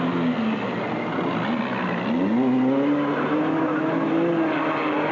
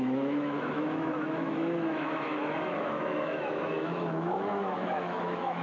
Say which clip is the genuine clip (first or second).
first